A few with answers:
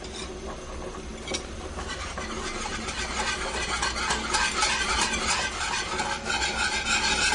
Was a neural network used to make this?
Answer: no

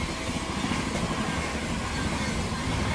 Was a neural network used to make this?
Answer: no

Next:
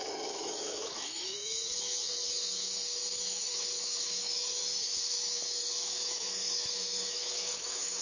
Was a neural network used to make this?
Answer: yes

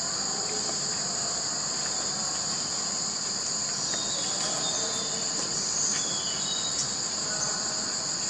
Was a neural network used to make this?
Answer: no